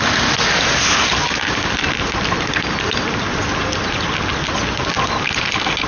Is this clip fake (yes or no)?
no